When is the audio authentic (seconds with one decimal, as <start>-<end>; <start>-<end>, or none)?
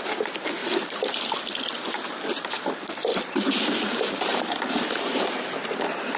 0.0-0.6; 1.1-3.1; 5.7-6.2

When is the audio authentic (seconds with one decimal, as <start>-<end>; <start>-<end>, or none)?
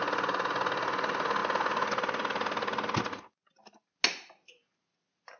0.0-5.4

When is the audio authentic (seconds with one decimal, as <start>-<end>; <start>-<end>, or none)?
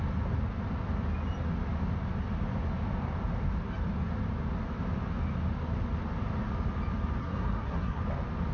0.0-7.2; 8.0-8.5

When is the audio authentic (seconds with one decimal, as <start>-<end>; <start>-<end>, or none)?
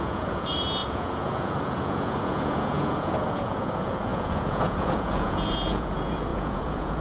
none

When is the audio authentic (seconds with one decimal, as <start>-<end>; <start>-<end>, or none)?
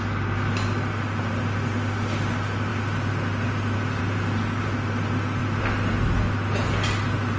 0.0-7.4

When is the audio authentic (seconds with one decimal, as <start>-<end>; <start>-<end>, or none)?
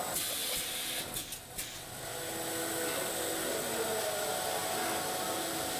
0.0-5.8